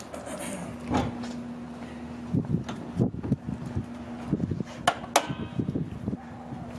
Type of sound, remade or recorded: recorded